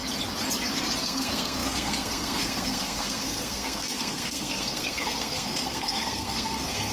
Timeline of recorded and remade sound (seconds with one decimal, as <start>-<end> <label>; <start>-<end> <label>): 0.0-1.0 recorded; 1.0-6.9 remade